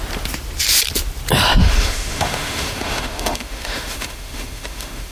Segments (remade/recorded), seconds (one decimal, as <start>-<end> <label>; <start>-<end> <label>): 0.0-1.6 recorded; 1.6-5.1 remade